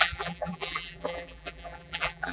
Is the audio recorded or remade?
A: remade